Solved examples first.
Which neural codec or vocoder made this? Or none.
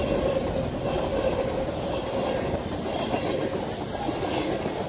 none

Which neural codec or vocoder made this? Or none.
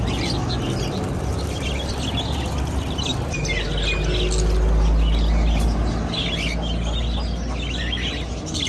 none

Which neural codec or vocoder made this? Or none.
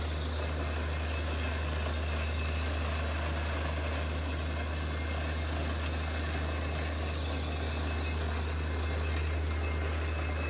none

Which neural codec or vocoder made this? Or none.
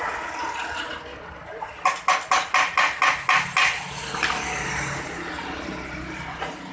none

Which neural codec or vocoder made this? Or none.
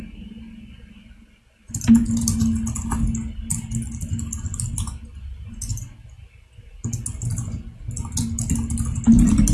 none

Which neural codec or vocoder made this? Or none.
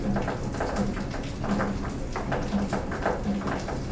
none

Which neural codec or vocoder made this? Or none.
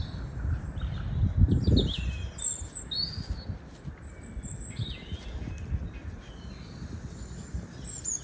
none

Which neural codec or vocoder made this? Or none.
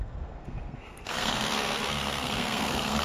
codec, SNAC